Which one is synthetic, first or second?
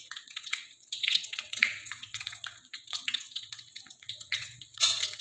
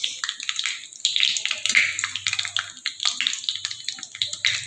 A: first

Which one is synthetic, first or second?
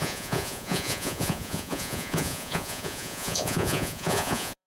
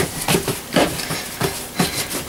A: first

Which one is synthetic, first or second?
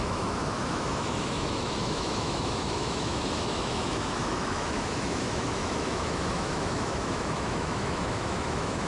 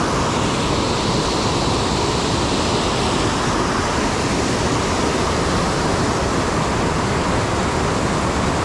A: first